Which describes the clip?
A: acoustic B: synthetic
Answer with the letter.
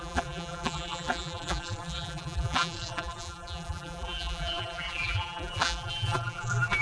B